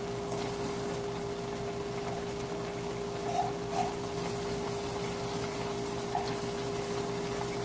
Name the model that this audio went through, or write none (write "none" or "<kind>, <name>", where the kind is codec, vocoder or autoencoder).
none